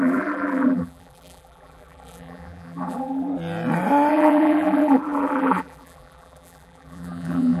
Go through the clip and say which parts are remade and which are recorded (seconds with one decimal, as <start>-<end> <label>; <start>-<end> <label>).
0.0-3.3 remade; 3.3-4.1 recorded; 4.1-7.6 remade